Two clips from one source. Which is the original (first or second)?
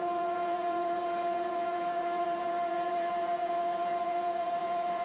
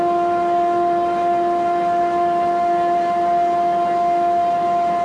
second